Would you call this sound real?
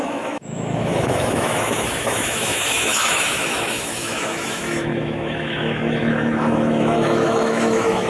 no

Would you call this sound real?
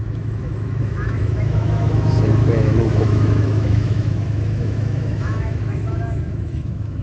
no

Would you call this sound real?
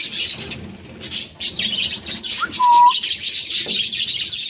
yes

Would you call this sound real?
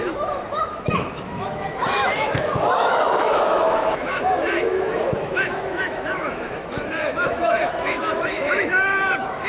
no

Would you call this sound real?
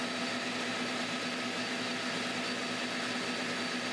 yes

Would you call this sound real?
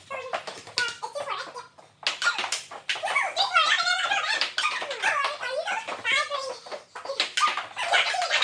yes